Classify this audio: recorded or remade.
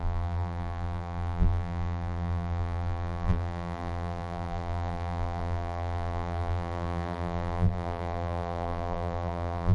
remade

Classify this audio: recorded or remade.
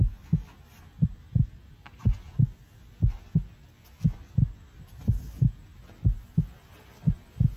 recorded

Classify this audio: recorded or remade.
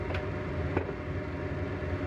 recorded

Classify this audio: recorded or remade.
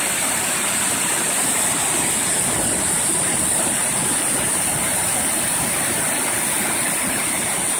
remade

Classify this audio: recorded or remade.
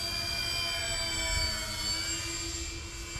recorded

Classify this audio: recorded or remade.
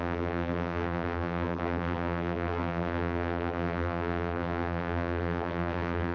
remade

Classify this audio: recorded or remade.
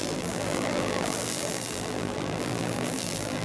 remade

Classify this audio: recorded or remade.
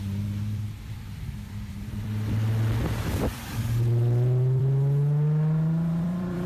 remade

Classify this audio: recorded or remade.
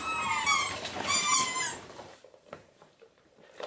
remade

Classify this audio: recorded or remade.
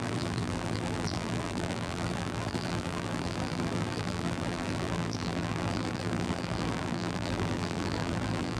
remade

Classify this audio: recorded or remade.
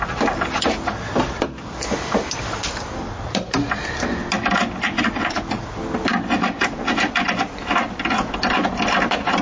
recorded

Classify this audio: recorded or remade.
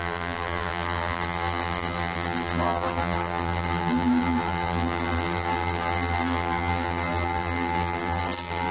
remade